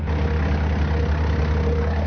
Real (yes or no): yes